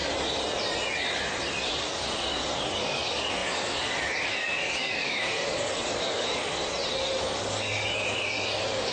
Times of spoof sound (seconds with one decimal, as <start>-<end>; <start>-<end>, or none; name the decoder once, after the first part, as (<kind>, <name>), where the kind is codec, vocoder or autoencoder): 1.7-6.6 (codec, DAC); 7.2-8.9